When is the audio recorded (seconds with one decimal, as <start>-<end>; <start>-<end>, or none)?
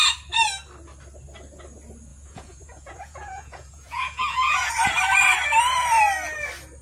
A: 0.0-2.1; 4.7-6.8